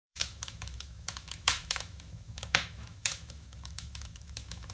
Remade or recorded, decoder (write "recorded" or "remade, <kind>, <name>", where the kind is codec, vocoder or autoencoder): remade, autoencoder, DAC-VAE